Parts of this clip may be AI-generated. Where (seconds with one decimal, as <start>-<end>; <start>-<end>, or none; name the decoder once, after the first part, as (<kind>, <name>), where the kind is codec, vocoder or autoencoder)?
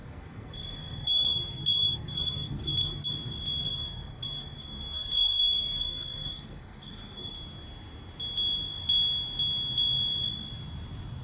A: 0.0-3.1 (codec, SNAC); 3.6-7.3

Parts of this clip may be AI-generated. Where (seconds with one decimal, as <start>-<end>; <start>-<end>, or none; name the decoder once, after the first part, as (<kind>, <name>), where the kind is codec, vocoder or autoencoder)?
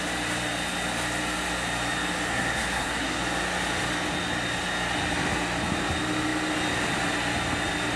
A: 2.3-3.2 (codec, SNAC)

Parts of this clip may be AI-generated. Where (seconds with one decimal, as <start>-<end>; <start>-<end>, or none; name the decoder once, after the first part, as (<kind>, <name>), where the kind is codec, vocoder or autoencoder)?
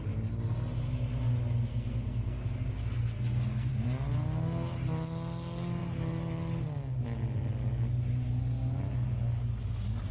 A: 1.7-3.7 (codec, SNAC)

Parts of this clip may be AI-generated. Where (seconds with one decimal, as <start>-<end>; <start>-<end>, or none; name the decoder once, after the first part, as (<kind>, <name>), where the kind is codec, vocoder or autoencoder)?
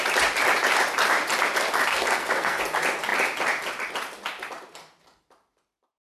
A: 1.9-2.6 (codec, SNAC)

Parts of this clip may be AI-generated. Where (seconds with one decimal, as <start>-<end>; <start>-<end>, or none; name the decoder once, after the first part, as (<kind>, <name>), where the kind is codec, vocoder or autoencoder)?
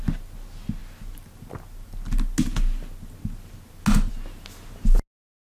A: none